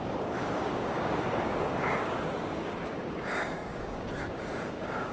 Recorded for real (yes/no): no